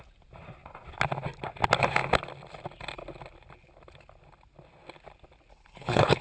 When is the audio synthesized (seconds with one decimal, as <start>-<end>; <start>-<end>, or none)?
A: 5.5-6.2